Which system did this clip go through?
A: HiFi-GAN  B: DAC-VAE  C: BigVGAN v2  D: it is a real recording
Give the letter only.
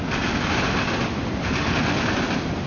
D